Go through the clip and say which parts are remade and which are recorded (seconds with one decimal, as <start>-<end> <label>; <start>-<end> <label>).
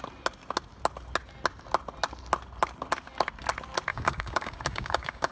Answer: 0.0-3.9 recorded; 3.9-5.3 remade